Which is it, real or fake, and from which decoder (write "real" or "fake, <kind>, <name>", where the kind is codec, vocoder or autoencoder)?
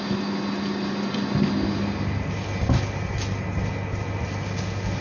real